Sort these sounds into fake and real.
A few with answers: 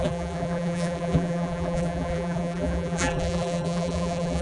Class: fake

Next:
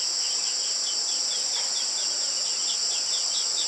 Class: real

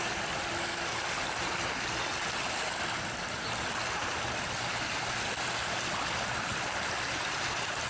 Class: real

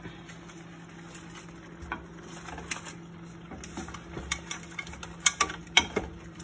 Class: real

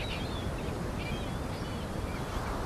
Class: fake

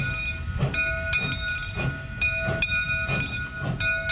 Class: real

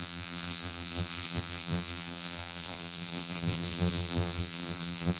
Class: fake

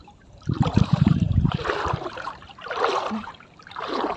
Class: fake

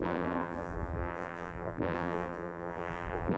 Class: fake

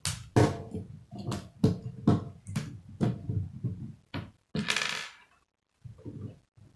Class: real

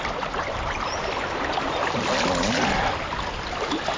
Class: real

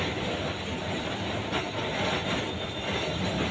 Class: real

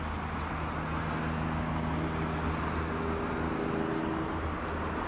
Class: real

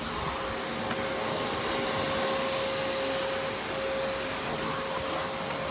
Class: real